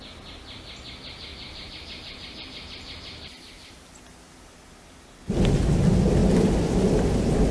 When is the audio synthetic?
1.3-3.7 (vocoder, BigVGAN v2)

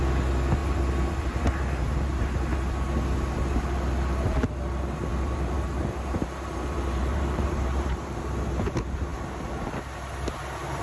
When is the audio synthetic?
0.6-2.2 (vocoder, BigVGAN v2); 5.1-8.2

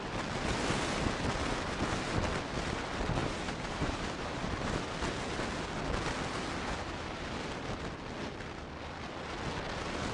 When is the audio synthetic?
3.2-4.8 (vocoder, BigVGAN v2)

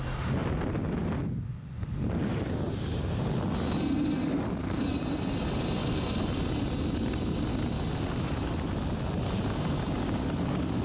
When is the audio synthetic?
none

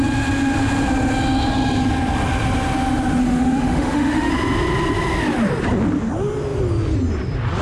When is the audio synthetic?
3.2-4.3 (autoencoder, DAC-VAE)

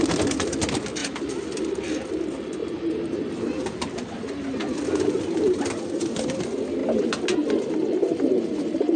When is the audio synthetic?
2.6-3.3 (vocoder, BigVGAN v2); 8.0-9.0

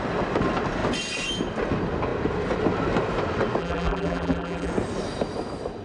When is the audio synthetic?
3.6-4.7 (vocoder, BigVGAN v2)